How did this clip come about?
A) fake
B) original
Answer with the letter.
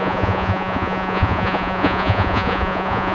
A